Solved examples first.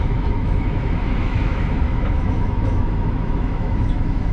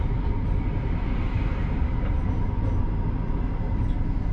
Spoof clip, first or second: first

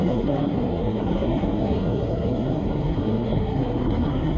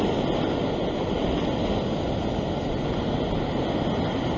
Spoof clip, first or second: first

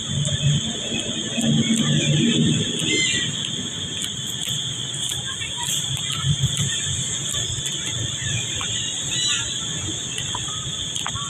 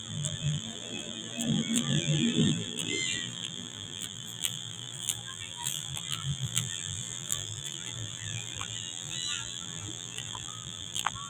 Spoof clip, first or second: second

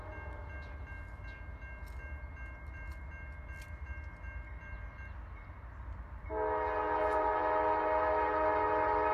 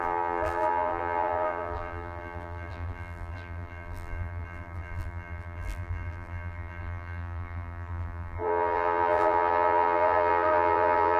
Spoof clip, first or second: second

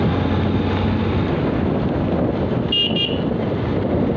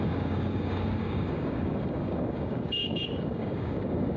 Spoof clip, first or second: second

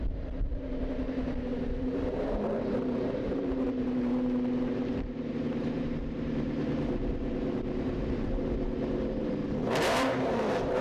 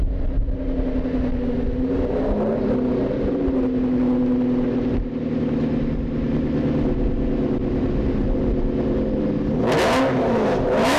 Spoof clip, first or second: first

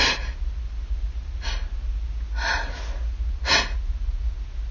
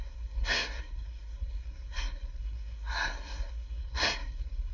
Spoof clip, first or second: second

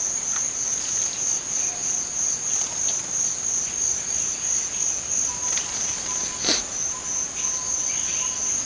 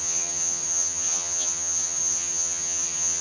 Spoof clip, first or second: second